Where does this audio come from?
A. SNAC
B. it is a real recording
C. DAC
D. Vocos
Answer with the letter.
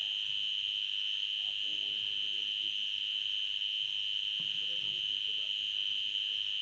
B